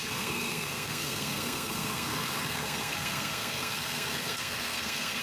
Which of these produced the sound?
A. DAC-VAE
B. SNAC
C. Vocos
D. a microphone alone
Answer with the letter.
B